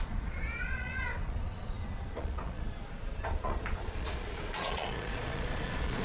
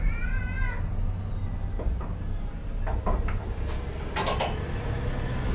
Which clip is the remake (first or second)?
first